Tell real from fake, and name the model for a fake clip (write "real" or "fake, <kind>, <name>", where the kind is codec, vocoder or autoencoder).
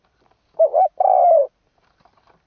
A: fake, vocoder, BigVGAN v2